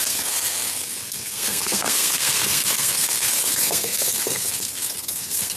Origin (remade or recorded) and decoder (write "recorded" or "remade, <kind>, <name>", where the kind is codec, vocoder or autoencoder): remade, codec, SNAC